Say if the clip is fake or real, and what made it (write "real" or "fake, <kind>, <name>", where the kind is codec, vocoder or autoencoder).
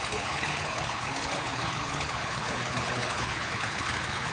fake, codec, HILCodec